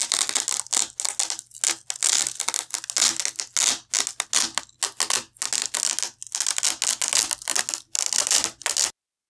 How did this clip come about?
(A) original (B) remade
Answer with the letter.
A